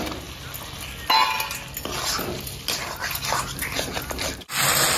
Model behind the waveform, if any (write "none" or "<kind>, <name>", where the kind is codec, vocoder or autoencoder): none